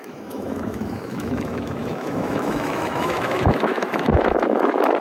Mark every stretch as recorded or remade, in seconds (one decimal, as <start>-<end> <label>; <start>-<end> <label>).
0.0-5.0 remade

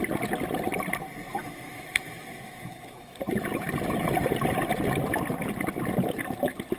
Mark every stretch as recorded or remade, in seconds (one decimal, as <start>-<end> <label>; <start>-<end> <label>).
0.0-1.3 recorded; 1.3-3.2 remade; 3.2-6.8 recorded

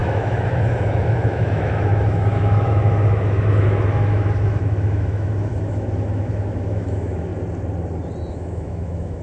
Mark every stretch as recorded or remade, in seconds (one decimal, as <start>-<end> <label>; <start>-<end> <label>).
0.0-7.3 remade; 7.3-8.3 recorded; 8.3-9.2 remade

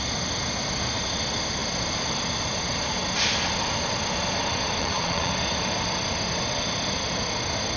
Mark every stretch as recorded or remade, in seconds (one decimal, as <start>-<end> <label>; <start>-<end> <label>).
0.0-4.8 recorded; 4.8-5.3 remade; 5.3-7.8 recorded

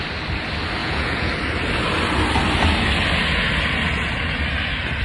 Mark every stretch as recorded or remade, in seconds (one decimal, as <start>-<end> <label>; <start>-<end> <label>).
0.0-0.8 recorded; 0.8-1.3 remade; 1.3-5.0 recorded

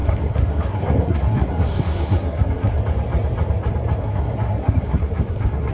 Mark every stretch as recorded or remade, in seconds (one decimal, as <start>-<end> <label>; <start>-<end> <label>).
0.0-2.8 remade; 2.8-4.0 recorded; 4.0-5.7 remade

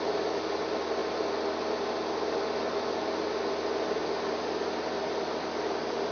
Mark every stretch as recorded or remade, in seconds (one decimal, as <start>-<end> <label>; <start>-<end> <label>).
0.0-6.1 recorded

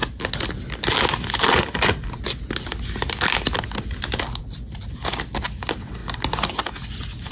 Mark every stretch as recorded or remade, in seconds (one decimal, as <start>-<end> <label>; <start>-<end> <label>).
0.0-7.3 recorded